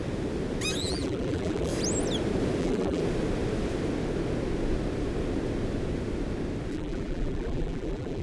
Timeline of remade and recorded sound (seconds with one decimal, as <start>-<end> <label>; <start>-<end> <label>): 0.0-0.8 recorded; 0.8-1.7 remade; 1.7-2.6 recorded; 2.6-3.0 remade; 3.0-6.7 recorded; 6.7-8.2 remade